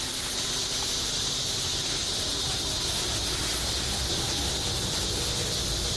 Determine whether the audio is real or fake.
real